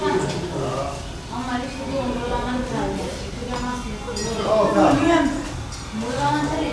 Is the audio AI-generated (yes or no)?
no